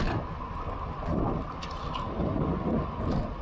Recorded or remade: recorded